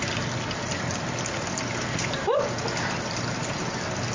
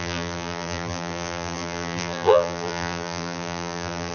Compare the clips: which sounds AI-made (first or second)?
second